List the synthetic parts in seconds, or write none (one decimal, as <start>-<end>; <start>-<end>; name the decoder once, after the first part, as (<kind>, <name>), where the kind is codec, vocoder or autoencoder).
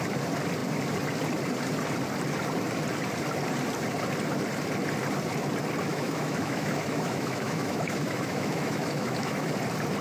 5.9-9.5 (autoencoder, DAC-VAE)